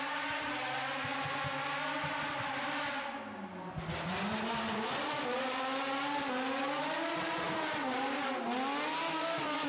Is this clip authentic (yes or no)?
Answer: yes